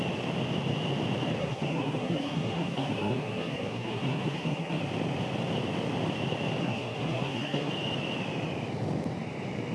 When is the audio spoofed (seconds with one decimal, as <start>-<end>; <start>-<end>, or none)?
1.4-4.8; 6.6-7.7